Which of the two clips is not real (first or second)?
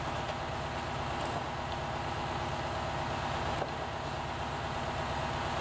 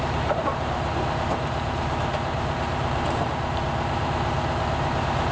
second